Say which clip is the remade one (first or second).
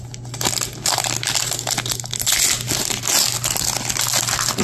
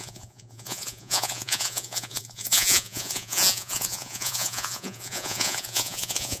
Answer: second